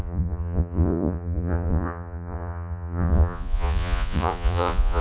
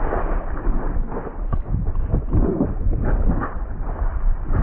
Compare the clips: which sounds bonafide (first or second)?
second